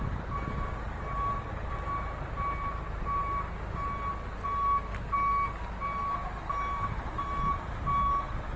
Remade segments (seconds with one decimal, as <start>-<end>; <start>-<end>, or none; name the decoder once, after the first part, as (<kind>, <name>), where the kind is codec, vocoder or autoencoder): none